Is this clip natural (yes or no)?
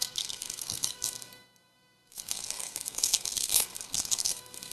no